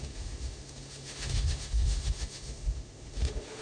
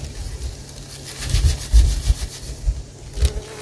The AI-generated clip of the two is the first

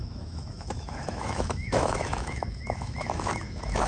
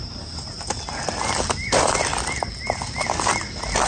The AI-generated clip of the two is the first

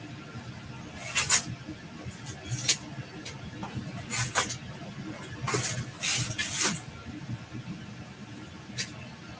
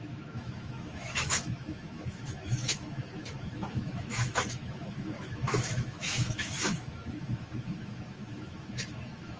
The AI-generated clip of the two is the second